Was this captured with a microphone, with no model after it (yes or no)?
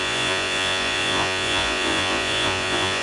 no